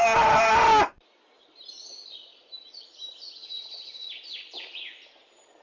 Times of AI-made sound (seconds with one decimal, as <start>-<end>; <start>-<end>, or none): none